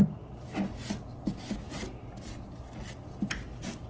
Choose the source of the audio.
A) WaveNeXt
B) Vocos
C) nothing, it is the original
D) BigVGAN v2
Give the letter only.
C